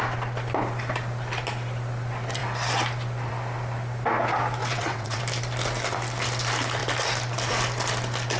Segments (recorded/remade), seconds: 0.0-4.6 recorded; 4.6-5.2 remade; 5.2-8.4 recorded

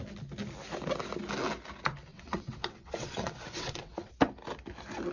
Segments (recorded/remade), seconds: 0.0-2.1 recorded; 2.1-4.2 remade; 4.2-5.1 recorded

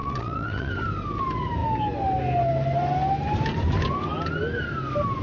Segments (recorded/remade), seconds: 0.0-0.7 remade; 0.7-5.2 recorded

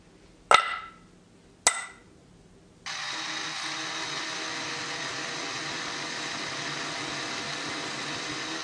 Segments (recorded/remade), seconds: 0.0-8.6 recorded

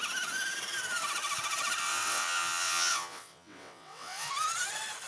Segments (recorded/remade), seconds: 0.0-1.8 recorded; 1.8-4.3 remade; 4.3-5.1 recorded

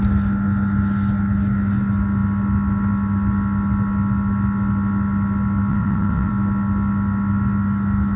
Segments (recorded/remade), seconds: 0.0-5.7 recorded; 5.7-6.3 remade; 6.3-8.2 recorded